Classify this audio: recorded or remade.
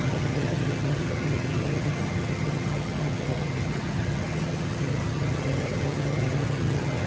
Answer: remade